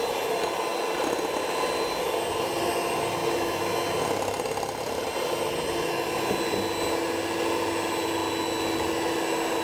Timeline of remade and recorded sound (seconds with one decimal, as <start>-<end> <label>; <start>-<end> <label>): 0.0-9.6 recorded